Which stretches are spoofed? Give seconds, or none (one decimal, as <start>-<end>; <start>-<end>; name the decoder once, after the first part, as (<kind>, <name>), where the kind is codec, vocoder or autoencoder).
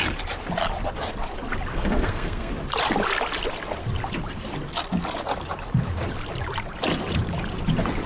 1.7-2.5 (codec, SNAC)